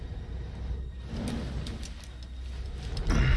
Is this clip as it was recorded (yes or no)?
yes